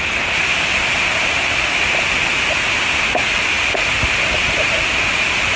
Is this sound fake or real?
real